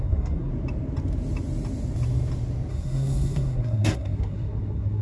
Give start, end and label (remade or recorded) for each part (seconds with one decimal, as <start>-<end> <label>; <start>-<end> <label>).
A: 0.0-0.5 remade; 0.5-2.7 recorded; 2.7-5.0 remade